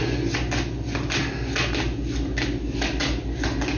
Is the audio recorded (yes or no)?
yes